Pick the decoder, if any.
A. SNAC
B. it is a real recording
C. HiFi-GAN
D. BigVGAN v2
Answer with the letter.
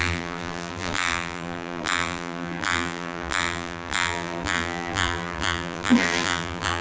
D